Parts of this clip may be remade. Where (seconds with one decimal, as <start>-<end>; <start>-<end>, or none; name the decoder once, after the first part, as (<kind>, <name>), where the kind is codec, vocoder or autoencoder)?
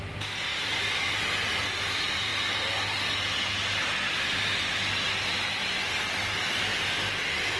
none